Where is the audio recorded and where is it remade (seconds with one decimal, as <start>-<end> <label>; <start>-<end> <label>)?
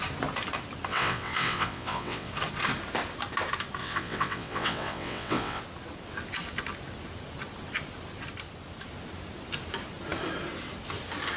0.0-0.9 recorded; 0.9-2.3 remade; 2.3-3.8 recorded; 3.8-5.6 remade; 5.6-11.4 recorded